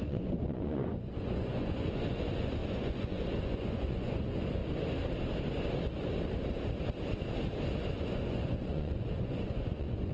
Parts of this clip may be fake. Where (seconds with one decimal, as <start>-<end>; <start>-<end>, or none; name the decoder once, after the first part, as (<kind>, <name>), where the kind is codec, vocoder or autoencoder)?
0.0-4.6 (vocoder, Vocos); 7.9-10.1